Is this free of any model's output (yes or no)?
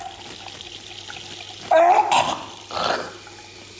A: yes